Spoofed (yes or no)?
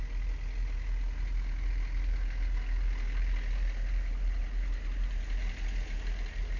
no